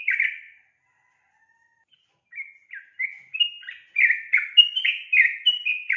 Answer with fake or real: real